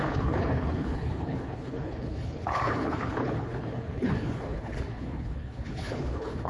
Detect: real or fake fake